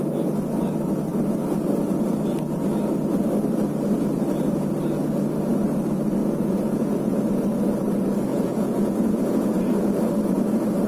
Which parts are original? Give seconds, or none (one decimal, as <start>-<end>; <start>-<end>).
0.0-6.2; 7.2-8.3; 9.9-10.9